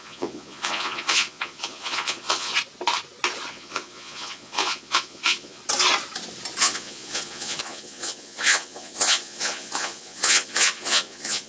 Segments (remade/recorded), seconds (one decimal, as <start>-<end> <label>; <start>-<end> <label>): 0.0-2.5 remade; 2.5-3.5 recorded; 3.5-5.6 remade; 5.6-6.6 recorded; 6.6-11.5 remade